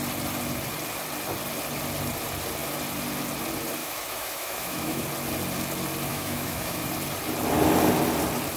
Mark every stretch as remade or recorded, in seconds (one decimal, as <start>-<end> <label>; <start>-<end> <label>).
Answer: 0.0-3.8 recorded; 3.8-5.0 remade; 5.0-6.1 recorded; 6.1-6.9 remade; 6.9-8.6 recorded